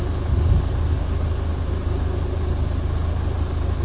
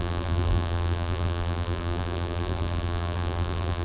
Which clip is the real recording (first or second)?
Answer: first